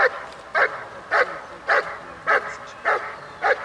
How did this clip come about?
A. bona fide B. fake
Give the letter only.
A